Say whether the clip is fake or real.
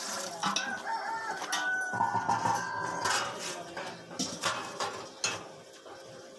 real